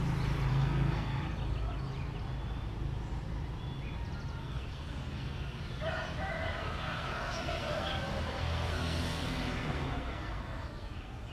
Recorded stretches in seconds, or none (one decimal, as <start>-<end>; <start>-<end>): 0.0-0.5; 1.2-4.4; 5.6-6.6; 7.9-8.3